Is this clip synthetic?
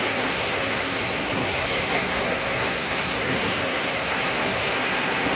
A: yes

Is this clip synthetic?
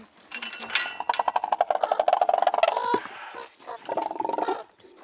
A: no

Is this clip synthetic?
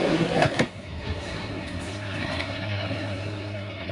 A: yes